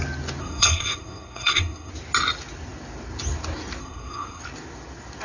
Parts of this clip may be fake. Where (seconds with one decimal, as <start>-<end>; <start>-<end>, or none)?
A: 0.4-1.9; 3.8-4.4